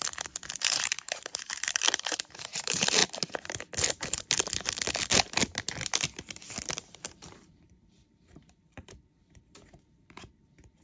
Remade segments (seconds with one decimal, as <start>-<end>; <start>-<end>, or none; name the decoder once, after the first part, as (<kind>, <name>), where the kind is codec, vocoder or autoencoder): 0.6-3.0 (vocoder, BigVGAN v2); 6.7-10.8